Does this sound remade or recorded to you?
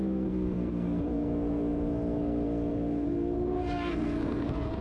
remade